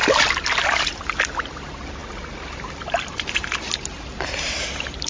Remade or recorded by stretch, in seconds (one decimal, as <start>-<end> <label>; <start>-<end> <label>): 0.0-5.1 recorded